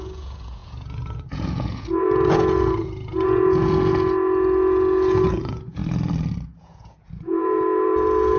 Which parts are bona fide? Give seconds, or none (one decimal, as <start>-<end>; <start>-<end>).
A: 5.8-6.6